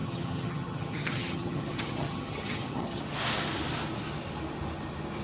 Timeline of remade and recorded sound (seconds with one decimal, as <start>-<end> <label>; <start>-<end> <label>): 0.0-3.0 remade; 3.0-5.2 recorded